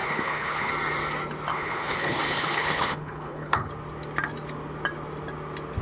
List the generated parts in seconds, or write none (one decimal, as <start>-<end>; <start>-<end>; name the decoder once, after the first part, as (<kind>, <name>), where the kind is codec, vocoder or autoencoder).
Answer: 0.0-0.7 (codec, HILCodec); 1.5-3.7